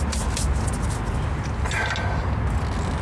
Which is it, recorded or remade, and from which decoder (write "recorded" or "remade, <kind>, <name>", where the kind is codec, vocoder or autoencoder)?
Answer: recorded